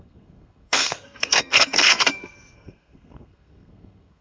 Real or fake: fake